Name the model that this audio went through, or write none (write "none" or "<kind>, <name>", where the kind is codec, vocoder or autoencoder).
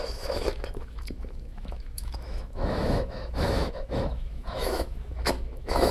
autoencoder, DAC-VAE